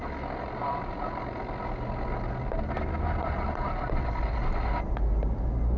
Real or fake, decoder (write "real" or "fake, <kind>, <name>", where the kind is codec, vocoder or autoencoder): real